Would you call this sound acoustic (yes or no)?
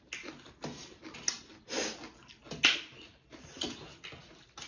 yes